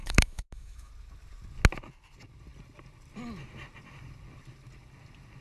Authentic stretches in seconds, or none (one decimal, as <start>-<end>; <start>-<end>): 0.9-5.4